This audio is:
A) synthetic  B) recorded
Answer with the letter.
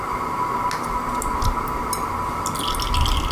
B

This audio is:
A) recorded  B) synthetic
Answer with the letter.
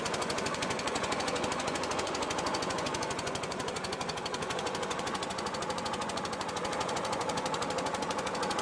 B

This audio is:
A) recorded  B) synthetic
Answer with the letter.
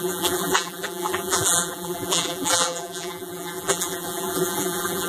B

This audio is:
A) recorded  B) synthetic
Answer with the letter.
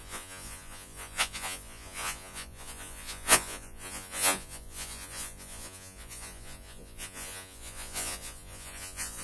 B